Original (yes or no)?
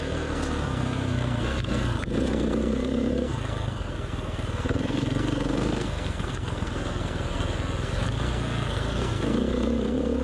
no